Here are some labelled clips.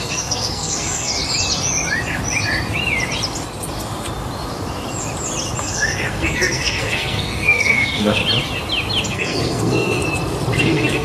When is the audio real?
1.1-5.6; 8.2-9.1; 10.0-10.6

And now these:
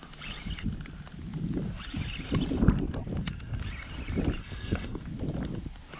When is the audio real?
0.0-4.4; 5.0-6.0

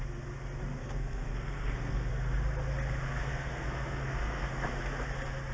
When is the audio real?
0.0-0.8; 2.1-3.2; 4.7-5.5